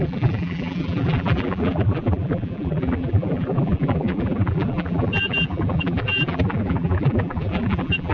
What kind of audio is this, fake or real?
fake